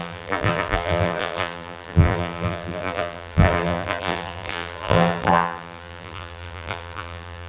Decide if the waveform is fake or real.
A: fake